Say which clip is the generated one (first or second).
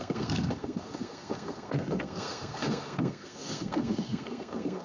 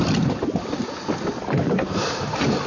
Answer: first